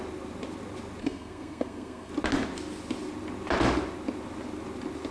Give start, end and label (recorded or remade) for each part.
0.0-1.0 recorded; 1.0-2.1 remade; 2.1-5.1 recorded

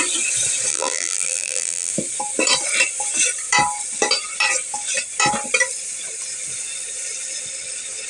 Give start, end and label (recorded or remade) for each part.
0.0-0.7 recorded; 0.7-1.9 remade; 1.9-8.1 recorded

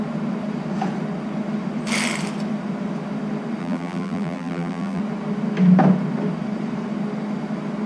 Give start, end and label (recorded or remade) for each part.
0.0-3.6 recorded; 3.6-5.0 remade; 5.0-7.9 recorded

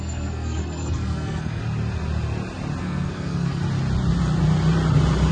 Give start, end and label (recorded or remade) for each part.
0.0-1.6 remade; 1.6-2.8 recorded; 2.8-3.6 remade; 3.6-5.3 recorded

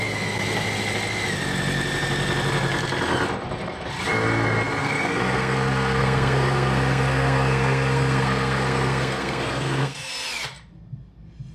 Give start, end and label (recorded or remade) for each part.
0.0-4.8 recorded; 4.8-10.1 remade; 10.1-11.5 recorded

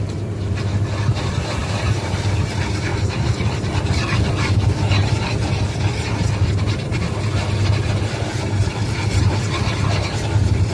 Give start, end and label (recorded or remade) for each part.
0.0-1.6 recorded; 1.6-2.1 remade; 2.1-10.7 recorded

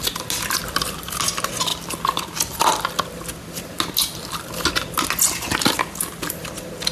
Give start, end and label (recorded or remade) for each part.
0.0-0.6 recorded; 0.6-1.2 remade; 1.2-6.9 recorded

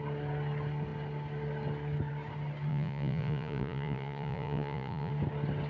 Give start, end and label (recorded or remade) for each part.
0.0-2.7 recorded; 2.7-5.1 remade; 5.1-5.7 recorded